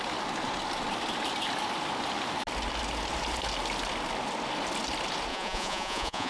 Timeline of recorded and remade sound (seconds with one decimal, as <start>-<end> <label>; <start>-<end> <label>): 0.0-5.3 recorded; 5.3-6.3 remade